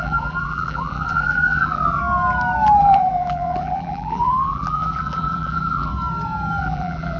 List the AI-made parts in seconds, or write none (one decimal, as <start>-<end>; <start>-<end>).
0.0-2.0; 2.8-5.9; 6.6-7.2